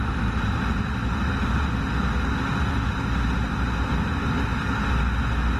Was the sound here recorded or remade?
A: recorded